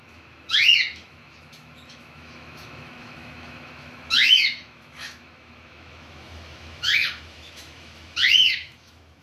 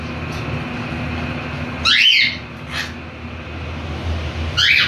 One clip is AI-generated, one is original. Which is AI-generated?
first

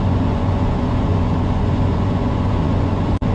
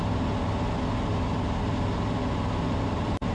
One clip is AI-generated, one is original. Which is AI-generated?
first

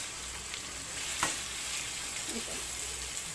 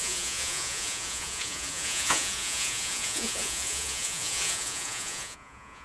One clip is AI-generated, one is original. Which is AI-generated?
second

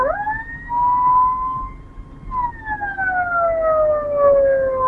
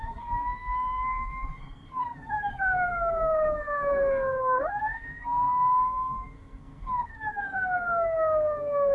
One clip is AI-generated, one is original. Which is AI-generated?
second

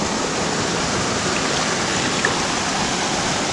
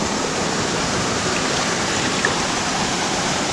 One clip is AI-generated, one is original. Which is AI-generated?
second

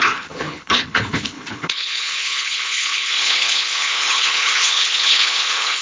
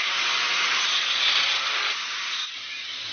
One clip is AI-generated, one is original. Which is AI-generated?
first